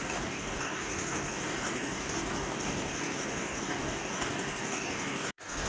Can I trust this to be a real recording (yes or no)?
no